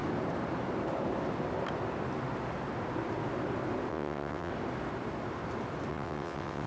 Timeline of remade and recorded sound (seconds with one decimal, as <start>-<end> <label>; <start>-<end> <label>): 0.0-3.9 recorded; 3.9-4.5 remade; 4.5-5.9 recorded; 5.9-6.7 remade